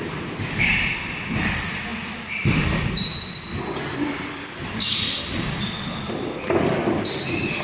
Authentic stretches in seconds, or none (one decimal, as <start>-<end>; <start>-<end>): 0.0-7.6